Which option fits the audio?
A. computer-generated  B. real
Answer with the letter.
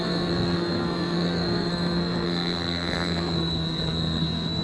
A